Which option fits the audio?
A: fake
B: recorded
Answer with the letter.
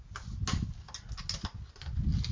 B